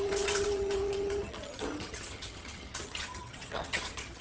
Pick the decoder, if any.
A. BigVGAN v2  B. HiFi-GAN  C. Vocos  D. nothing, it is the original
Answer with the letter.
B